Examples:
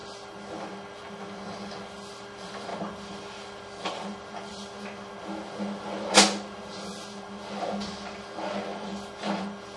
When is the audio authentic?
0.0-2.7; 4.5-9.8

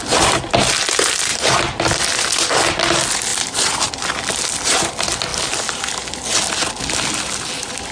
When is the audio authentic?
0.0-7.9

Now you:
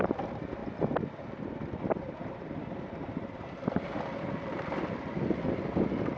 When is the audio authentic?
0.0-0.6; 4.3-6.2

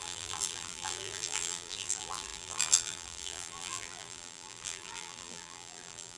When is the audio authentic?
none

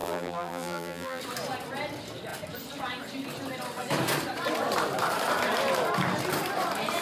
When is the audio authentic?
1.2-7.0

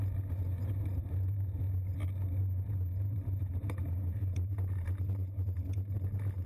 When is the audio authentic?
0.0-1.0; 1.6-2.4

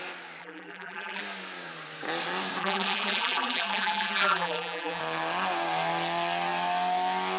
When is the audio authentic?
0.0-0.4; 1.2-2.6; 5.0-7.4

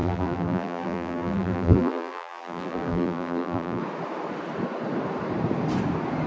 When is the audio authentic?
3.8-6.3